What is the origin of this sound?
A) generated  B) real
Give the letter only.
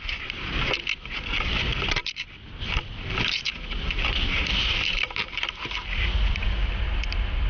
B